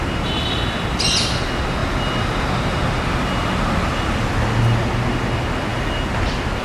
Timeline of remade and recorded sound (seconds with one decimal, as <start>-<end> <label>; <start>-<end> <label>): 0.0-6.6 recorded